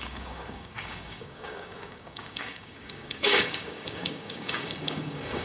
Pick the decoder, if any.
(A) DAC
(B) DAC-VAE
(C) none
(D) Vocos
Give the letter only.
A